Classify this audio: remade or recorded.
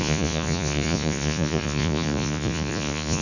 remade